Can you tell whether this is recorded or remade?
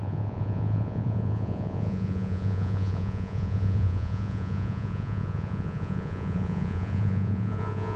remade